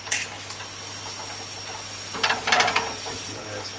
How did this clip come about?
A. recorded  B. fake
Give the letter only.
A